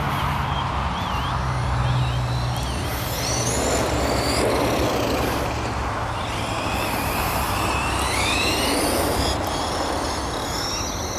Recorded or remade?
recorded